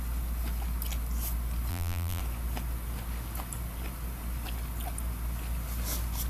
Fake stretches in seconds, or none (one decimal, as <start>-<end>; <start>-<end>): 1.7-2.2